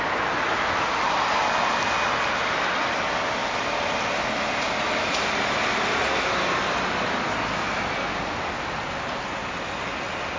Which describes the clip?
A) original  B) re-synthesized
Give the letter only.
A